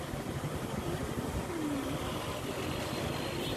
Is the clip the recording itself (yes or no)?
yes